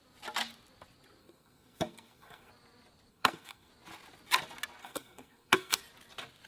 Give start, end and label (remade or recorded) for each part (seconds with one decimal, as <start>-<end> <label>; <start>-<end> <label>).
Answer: 0.0-1.2 recorded; 1.2-2.5 remade; 2.5-3.1 recorded; 3.1-3.7 remade; 3.7-4.8 recorded; 4.8-5.8 remade; 5.8-6.5 recorded